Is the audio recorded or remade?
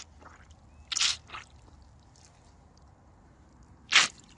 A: recorded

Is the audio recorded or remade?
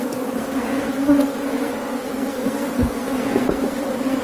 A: remade